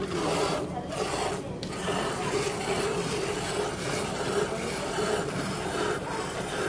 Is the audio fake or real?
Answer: fake